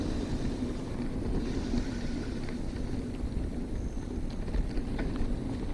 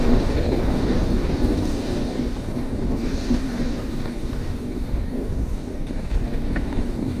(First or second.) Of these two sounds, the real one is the first